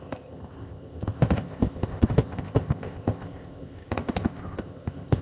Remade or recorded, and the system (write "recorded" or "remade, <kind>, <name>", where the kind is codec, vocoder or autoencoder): remade, codec, ZipCodec